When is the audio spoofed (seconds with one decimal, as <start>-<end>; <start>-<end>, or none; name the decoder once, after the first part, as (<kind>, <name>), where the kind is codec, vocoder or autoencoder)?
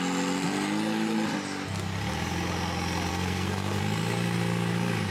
3.1-3.8 (codec, SNAC)